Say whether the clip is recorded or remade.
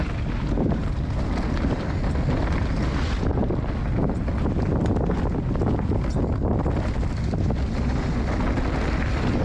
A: recorded